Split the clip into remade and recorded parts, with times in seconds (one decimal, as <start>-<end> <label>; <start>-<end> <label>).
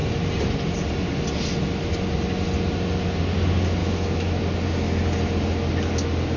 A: 0.0-3.8 recorded; 3.8-4.4 remade; 4.4-6.4 recorded